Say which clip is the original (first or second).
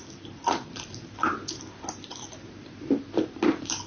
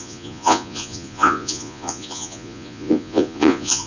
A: first